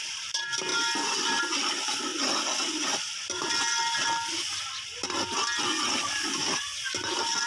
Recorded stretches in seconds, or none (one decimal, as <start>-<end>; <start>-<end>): 0.7-1.4; 2.1-6.1